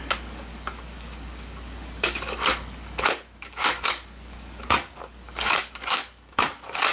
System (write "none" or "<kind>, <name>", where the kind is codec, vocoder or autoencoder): codec, DAC